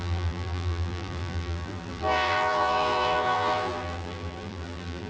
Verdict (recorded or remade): remade